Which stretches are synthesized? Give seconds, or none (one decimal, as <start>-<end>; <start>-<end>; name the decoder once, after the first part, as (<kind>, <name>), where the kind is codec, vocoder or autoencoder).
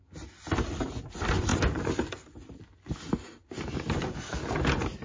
none